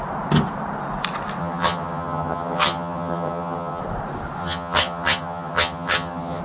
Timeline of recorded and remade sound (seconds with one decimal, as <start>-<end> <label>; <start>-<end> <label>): 0.0-1.4 recorded; 1.4-3.8 remade; 3.8-4.4 recorded; 4.4-6.4 remade